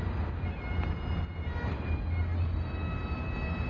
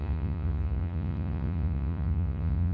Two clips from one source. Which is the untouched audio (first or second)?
first